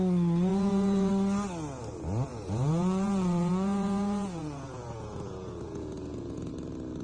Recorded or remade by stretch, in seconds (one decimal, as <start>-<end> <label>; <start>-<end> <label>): 0.0-0.5 recorded; 0.5-1.1 remade; 1.1-2.3 recorded; 2.3-6.5 remade; 6.5-7.0 recorded